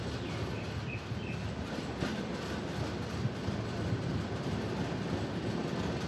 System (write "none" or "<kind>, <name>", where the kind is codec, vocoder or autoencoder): none